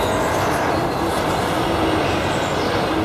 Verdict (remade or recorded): recorded